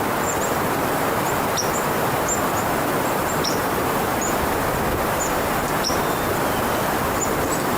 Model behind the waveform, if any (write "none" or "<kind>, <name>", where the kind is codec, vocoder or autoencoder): vocoder, BigVGAN v2